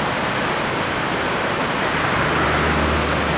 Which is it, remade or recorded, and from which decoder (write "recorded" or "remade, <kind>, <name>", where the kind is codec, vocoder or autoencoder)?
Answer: recorded